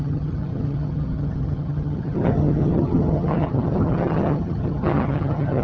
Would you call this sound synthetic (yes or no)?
yes